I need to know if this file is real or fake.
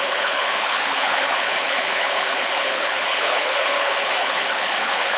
fake